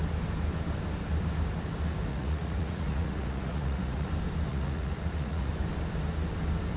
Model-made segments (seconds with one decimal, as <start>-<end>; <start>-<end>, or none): 2.1-4.1; 4.5-5.5